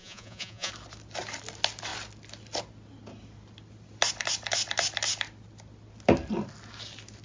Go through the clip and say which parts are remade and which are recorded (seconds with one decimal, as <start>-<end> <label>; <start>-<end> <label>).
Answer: 0.0-0.7 remade; 0.7-7.2 recorded